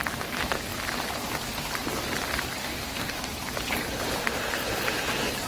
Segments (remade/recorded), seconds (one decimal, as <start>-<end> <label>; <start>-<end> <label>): 0.0-2.6 recorded; 2.6-3.2 remade; 3.2-5.5 recorded